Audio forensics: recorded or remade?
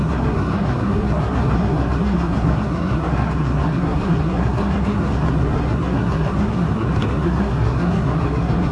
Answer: remade